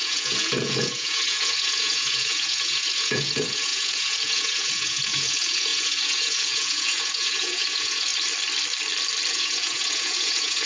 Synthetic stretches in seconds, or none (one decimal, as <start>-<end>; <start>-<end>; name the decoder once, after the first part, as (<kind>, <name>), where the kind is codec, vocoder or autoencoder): 0.0-8.1 (vocoder, Vocos); 9.3-10.7